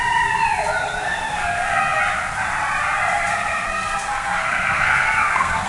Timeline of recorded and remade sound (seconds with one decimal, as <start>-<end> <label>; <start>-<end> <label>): 0.0-0.8 recorded; 0.8-2.0 remade; 2.0-3.3 recorded; 3.3-5.7 remade

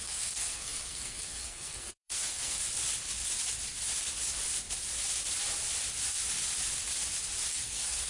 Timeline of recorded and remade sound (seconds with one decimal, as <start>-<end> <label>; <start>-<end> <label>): 0.0-2.6 remade; 2.6-7.5 recorded; 7.5-8.1 remade

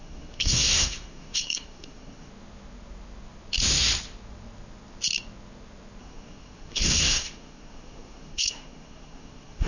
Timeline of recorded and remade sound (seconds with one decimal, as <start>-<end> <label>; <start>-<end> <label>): 0.0-2.3 remade; 2.3-6.0 recorded; 6.0-9.7 remade

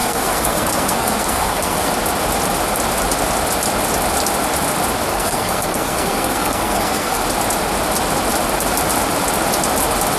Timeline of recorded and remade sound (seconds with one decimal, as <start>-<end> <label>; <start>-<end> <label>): 0.0-1.9 remade; 1.9-5.1 recorded; 5.1-7.2 remade; 7.2-10.2 recorded

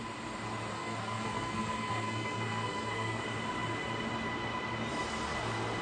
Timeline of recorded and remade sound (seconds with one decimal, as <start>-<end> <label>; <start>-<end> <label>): 0.0-0.7 recorded; 0.7-3.2 remade; 3.2-5.8 recorded